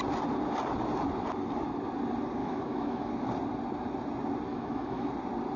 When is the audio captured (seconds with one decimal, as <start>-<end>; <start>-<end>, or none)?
0.0-2.4; 3.1-4.5; 5.1-5.6